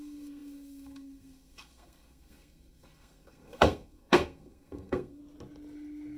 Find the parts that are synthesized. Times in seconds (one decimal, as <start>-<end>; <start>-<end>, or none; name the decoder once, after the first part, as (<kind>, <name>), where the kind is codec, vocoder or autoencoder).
0.0-5.2 (codec, SNAC)